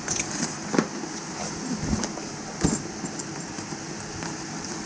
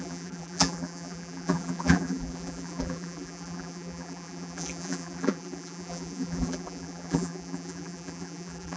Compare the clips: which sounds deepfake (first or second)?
second